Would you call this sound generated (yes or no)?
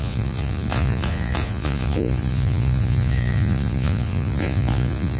yes